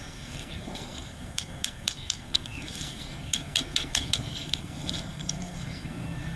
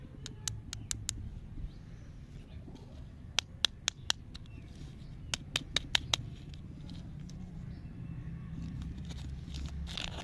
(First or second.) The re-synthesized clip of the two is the first